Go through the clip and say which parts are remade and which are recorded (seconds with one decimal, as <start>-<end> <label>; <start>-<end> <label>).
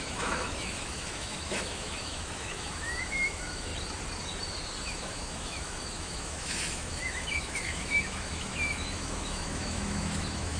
0.0-3.7 remade; 3.7-4.8 recorded; 4.8-10.6 remade